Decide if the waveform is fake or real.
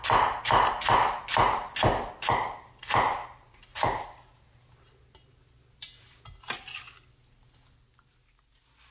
real